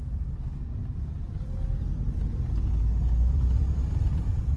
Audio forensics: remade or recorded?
remade